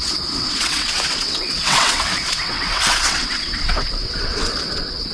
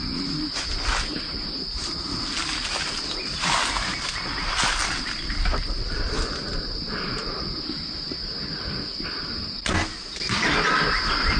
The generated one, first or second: first